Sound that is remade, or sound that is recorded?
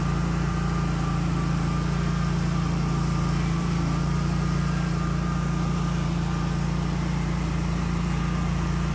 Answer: remade